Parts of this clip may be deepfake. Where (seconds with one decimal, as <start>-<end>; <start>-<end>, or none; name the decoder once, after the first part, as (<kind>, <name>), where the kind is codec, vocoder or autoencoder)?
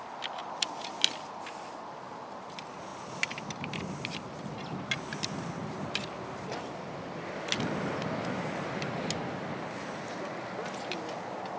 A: 2.9-3.4 (vocoder, BigVGAN v2); 5.1-5.7